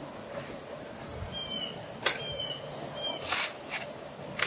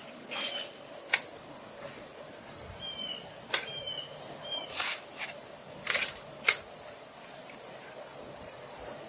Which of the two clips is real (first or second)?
first